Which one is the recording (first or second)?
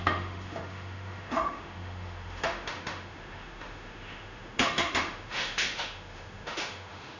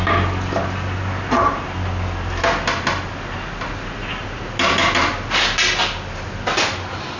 second